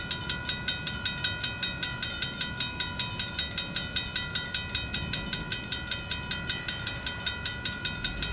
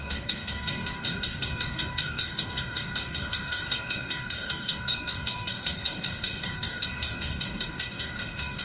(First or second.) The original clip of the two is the first